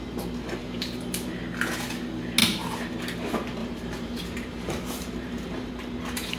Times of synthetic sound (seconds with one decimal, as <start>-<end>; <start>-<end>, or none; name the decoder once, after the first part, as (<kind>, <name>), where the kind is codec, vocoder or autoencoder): 0.6-1.4 (vocoder, BigVGAN v2); 2.4-3.0; 3.6-5.7